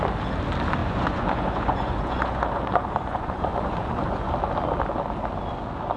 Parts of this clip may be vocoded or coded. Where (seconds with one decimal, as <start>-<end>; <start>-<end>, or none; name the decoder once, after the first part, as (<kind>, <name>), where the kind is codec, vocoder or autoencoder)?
0.8-4.3 (vocoder, Vocos)